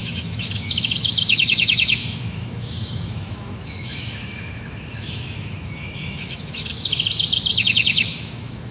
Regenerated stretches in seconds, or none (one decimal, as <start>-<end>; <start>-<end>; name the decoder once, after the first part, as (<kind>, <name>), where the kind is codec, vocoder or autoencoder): 0.0-6.9 (autoencoder, DAC-VAE); 7.6-8.7